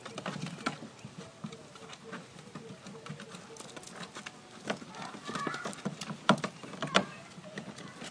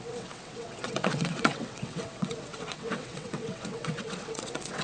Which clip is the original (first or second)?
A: first